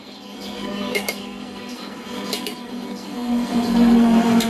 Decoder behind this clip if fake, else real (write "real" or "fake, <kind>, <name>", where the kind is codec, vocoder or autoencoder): fake, codec, SNAC